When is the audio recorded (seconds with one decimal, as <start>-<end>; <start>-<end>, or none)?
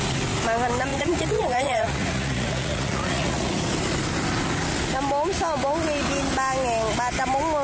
0.0-0.9; 3.6-7.6